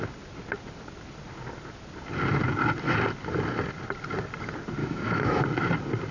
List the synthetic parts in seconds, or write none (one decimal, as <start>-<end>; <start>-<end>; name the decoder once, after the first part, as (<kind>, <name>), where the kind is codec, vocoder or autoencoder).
4.8-5.4 (autoencoder, DAC-VAE)